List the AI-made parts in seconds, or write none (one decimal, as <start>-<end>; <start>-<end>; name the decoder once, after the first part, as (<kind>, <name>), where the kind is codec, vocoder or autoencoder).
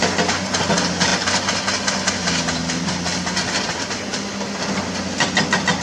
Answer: none